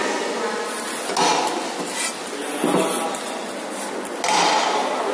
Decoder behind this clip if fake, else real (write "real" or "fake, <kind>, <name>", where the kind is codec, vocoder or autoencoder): real